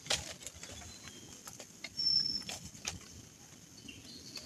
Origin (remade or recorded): recorded